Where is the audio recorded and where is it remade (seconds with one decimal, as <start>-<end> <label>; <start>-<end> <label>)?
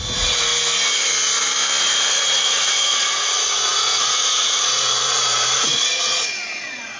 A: 0.0-0.5 remade; 0.5-1.8 recorded; 1.8-7.0 remade